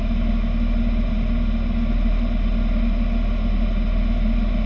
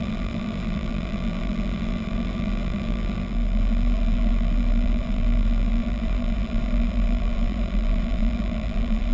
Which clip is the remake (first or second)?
second